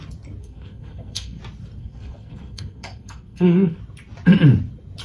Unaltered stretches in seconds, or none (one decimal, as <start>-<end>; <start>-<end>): 0.0-0.4; 1.4-1.8; 3.8-5.0